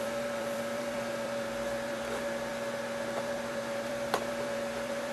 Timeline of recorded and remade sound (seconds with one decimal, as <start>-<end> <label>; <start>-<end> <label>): 0.0-2.5 remade; 2.5-3.2 recorded; 3.2-5.1 remade